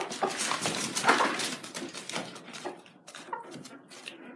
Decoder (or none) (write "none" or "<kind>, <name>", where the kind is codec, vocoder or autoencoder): none